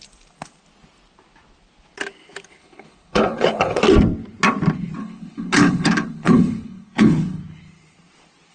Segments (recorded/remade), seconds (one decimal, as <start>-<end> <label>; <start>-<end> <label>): 0.0-2.6 recorded; 2.6-3.8 remade; 3.8-5.0 recorded; 5.0-7.4 remade; 7.4-8.5 recorded